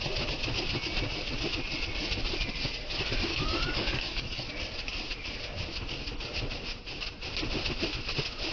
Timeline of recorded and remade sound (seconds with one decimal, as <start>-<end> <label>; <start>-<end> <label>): 0.0-3.3 recorded; 3.3-4.5 remade; 4.5-8.5 recorded